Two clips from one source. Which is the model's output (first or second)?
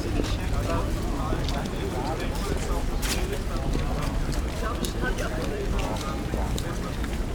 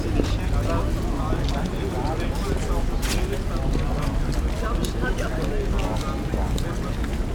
first